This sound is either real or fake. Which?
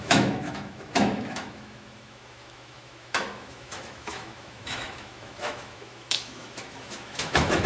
fake